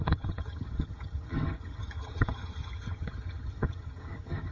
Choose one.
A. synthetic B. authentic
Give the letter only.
A